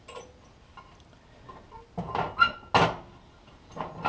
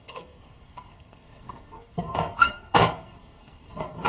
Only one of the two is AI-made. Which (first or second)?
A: second